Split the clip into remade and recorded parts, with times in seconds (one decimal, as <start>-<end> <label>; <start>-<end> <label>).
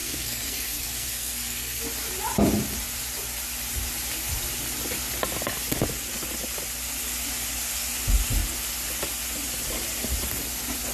0.0-1.8 remade; 1.8-10.9 recorded